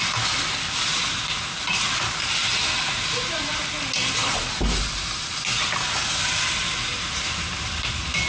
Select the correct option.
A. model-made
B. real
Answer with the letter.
B